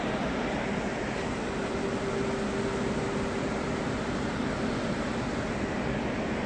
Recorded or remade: recorded